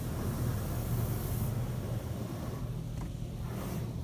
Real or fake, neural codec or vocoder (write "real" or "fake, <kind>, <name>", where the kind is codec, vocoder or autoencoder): real